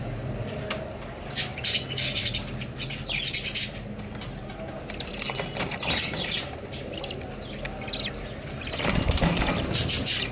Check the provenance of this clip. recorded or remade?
recorded